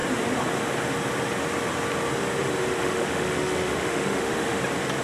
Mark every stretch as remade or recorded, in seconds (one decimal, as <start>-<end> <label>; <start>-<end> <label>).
0.0-2.8 recorded; 2.8-4.6 remade; 4.6-5.0 recorded